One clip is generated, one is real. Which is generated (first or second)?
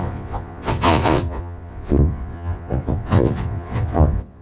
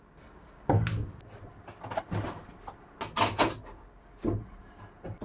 first